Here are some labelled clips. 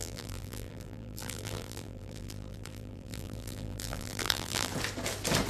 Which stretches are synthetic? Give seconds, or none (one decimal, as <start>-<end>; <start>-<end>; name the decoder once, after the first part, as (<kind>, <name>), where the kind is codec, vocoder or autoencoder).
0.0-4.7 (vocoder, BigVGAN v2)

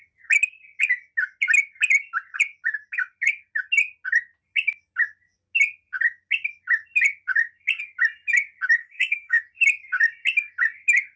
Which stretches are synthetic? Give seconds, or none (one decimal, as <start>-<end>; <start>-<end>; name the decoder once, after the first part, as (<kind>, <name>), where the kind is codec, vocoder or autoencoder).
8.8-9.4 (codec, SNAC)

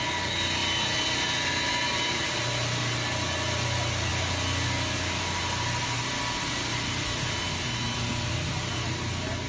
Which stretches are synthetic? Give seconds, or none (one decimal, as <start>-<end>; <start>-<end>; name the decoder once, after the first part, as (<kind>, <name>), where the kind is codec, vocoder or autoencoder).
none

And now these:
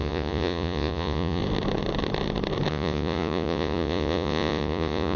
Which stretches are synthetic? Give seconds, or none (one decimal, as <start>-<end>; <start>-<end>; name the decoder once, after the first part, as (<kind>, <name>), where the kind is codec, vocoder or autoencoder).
0.0-1.4 (vocoder, Vocos); 2.7-5.2

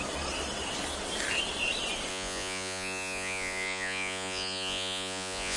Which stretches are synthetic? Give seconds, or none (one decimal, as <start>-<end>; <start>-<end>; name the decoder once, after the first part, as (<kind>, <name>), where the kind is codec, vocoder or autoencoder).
2.1-5.6 (vocoder, Vocos)

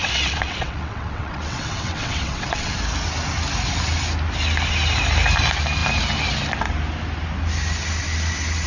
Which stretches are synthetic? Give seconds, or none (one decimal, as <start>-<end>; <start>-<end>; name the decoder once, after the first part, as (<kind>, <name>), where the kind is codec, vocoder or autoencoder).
0.0-2.7 (vocoder, WaveNeXt)

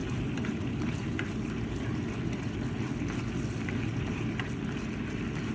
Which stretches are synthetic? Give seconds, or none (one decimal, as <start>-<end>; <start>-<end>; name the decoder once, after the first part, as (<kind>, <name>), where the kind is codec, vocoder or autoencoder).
none

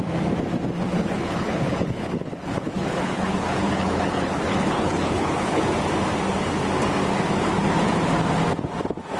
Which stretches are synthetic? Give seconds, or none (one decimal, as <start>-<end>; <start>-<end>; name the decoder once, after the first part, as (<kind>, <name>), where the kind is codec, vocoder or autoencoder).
0.9-5.6 (codec, HILCodec)